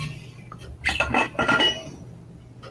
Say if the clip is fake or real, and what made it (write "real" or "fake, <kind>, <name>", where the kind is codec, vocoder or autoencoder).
real